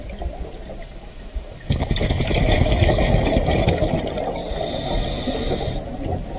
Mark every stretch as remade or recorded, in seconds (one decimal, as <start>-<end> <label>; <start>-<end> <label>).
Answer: 0.0-0.8 recorded; 0.8-3.9 remade; 3.9-6.4 recorded